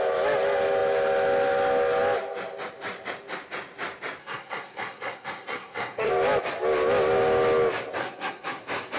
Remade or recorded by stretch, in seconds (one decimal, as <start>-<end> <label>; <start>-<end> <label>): 0.0-4.2 recorded; 4.2-6.1 remade; 6.1-8.0 recorded; 8.0-8.6 remade; 8.6-9.0 recorded